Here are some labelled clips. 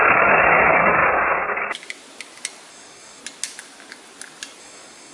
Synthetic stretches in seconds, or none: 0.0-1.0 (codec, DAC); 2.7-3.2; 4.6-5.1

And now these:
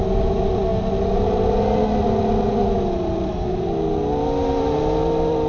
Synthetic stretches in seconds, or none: none

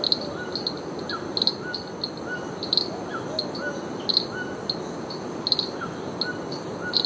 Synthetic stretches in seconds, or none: none